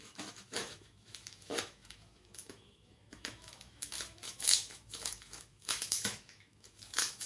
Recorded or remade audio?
remade